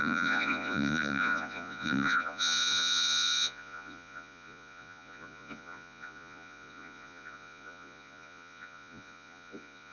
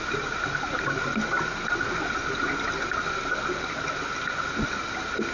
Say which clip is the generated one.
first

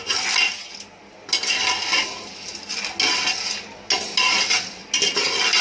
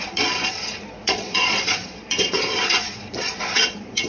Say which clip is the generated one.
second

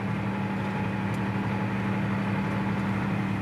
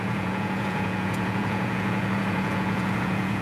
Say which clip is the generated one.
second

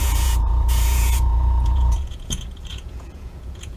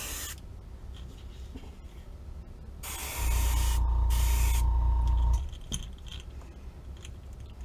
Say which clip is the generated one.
first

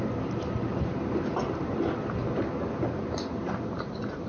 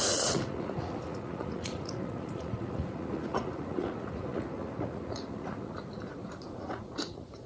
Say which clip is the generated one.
second